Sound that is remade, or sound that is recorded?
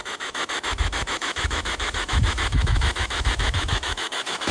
remade